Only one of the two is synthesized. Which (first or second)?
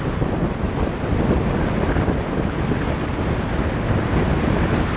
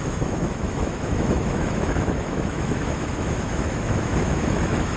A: second